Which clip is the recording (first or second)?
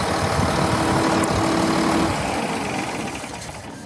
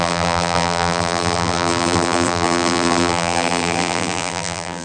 first